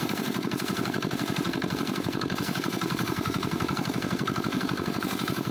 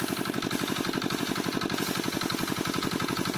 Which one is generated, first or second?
first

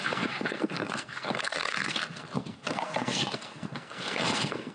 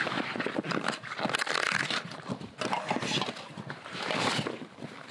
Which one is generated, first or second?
first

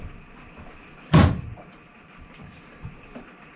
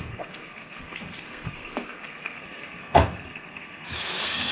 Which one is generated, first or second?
second